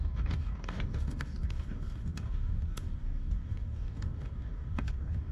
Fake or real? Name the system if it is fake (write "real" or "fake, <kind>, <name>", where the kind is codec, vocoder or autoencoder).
fake, codec, DAC